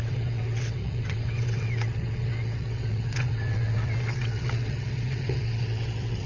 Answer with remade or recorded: remade